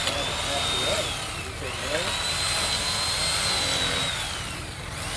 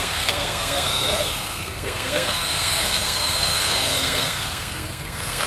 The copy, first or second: second